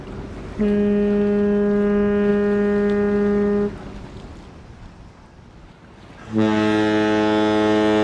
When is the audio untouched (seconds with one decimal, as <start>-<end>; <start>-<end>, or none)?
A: 0.0-8.0